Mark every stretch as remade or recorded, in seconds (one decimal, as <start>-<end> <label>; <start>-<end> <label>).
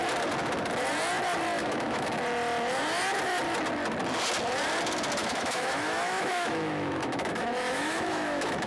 0.0-1.6 recorded; 1.6-2.2 remade; 2.2-5.2 recorded; 5.2-8.7 remade